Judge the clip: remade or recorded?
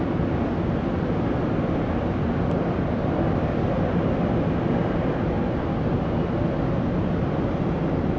recorded